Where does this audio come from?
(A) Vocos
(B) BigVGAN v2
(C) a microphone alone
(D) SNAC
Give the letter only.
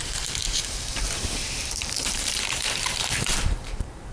B